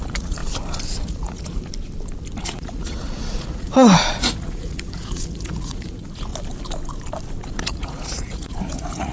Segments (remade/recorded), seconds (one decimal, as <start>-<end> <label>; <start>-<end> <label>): 0.0-0.4 remade; 0.4-1.0 recorded; 1.0-1.7 remade; 1.7-2.4 recorded; 2.4-6.3 remade; 6.3-7.6 recorded; 7.6-9.1 remade